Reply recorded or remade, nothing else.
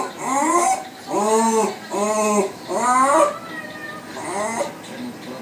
recorded